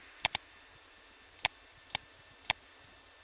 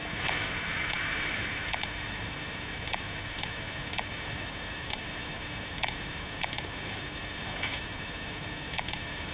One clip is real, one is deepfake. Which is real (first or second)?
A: first